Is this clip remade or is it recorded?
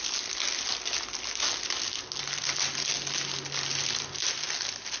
recorded